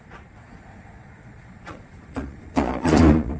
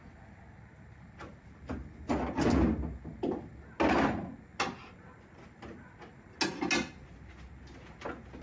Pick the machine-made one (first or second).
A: first